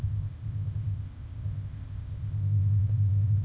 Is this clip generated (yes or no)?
yes